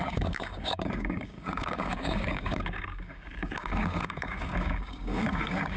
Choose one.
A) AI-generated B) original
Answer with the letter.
A